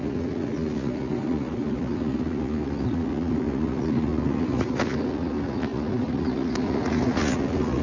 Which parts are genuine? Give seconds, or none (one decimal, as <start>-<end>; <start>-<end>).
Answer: none